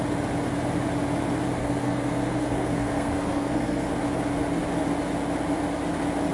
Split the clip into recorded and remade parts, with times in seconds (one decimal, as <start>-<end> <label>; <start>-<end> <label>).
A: 0.0-1.6 recorded; 1.6-3.9 remade; 3.9-6.3 recorded